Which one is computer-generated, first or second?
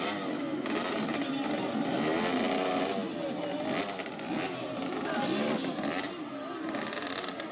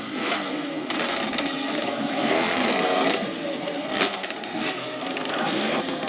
second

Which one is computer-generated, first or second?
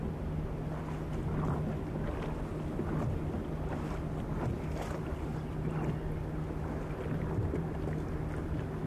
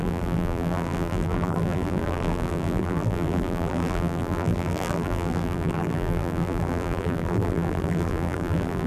second